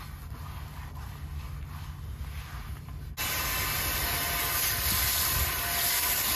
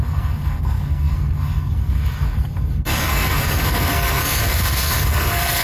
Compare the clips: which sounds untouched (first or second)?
first